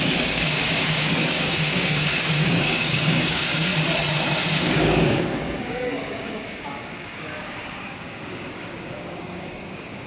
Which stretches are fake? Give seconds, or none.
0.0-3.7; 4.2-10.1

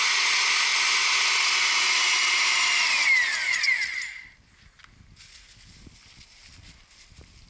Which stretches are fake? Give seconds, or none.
none

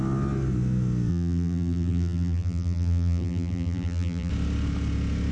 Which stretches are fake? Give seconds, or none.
1.1-4.3